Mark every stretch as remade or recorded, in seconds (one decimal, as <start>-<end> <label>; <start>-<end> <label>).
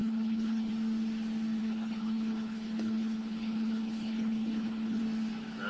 0.0-0.7 remade; 0.7-1.6 recorded; 1.6-5.0 remade; 5.0-5.7 recorded